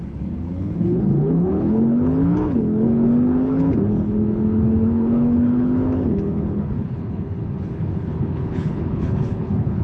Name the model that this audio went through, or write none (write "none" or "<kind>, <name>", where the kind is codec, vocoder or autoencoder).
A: codec, HILCodec